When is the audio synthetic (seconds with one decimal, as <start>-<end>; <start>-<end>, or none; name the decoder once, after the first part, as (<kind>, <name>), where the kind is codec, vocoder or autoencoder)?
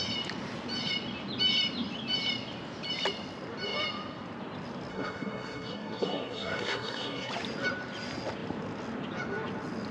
4.9-7.3 (codec, SNAC)